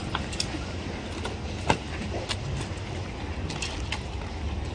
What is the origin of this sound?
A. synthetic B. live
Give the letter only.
B